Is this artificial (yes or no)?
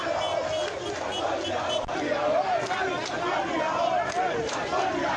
no